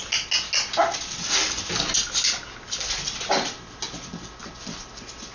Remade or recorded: recorded